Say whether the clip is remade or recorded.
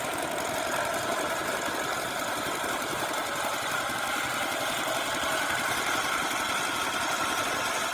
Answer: recorded